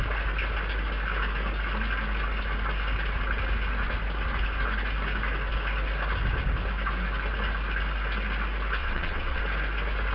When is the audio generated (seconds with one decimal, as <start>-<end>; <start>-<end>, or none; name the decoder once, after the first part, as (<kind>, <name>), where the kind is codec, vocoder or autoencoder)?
8.8-9.4 (vocoder, WaveNeXt)